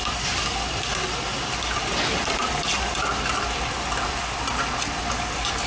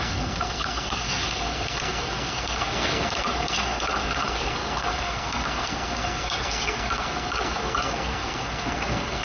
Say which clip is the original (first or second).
first